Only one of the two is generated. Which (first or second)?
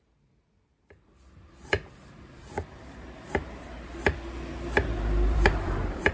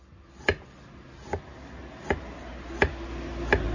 first